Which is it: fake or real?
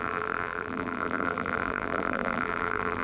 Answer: fake